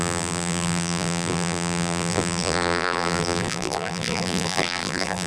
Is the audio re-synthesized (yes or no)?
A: yes